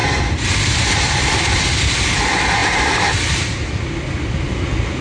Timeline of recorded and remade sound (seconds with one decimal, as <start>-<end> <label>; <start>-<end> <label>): 0.0-1.5 remade; 1.5-2.6 recorded; 2.6-4.0 remade; 4.0-5.0 recorded